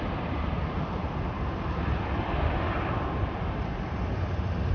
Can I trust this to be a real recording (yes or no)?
yes